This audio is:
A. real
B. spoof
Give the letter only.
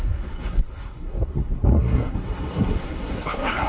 B